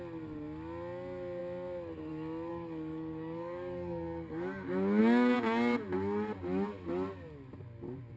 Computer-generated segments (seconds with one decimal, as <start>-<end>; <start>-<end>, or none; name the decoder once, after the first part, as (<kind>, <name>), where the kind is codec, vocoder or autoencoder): 2.5-5.0 (codec, DAC)